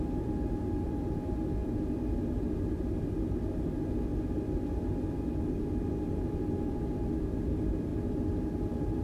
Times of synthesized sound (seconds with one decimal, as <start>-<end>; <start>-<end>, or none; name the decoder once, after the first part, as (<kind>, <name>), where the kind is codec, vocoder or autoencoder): 0.0-1.6 (vocoder, BigVGAN v2); 5.5-7.9